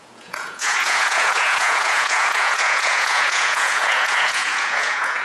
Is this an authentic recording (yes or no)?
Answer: no